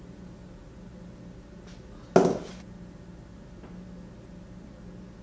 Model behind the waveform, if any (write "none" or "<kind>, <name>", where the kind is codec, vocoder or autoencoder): none